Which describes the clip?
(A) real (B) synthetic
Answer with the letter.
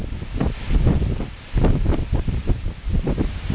B